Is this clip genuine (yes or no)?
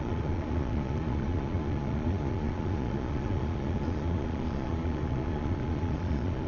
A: no